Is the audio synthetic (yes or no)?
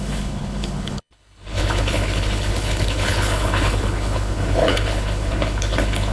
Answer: yes